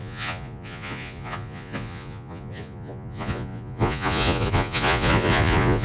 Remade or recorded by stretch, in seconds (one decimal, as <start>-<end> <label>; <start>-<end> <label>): 0.0-5.8 remade